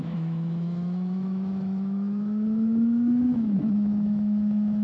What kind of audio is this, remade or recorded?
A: remade